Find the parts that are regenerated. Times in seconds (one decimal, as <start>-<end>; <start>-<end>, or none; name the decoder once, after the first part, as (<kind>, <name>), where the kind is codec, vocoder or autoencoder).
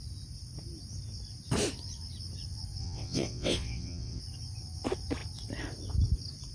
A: 2.8-4.2 (vocoder, WaveNeXt)